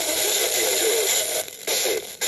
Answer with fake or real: fake